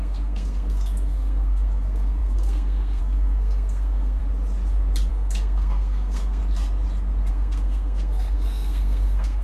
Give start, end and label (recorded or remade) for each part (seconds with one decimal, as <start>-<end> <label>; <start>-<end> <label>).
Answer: 0.0-4.2 remade; 4.2-5.1 recorded; 5.1-6.4 remade; 6.4-7.3 recorded; 7.3-9.4 remade